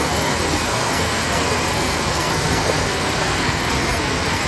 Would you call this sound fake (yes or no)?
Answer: yes